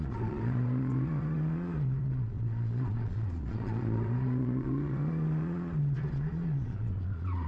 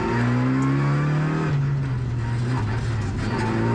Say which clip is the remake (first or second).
first